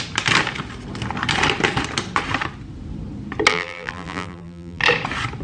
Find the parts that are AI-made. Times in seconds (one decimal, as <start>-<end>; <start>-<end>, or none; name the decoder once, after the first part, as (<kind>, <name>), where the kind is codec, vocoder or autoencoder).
3.5-4.8 (vocoder, BigVGAN v2)